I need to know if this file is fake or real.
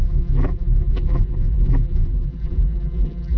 fake